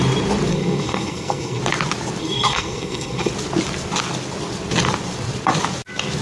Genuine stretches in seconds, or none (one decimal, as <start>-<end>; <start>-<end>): 0.0-0.5; 1.6-2.2; 3.3-6.2